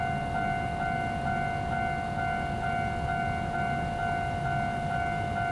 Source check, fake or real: real